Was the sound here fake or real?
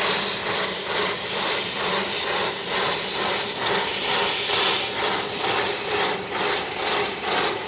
real